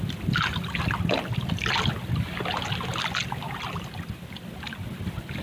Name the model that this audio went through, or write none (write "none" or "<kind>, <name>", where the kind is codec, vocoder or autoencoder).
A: none